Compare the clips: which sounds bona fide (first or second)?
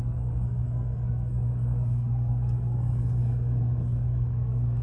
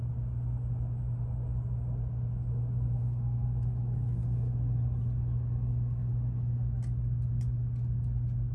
second